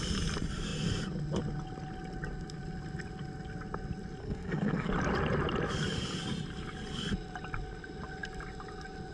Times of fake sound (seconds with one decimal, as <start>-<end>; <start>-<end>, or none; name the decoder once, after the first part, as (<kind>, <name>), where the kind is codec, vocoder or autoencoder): 4.2-4.9 (codec, SNAC)